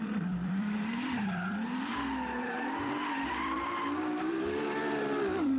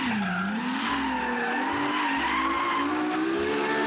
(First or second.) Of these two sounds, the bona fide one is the second